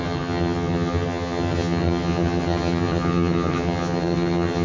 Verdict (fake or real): fake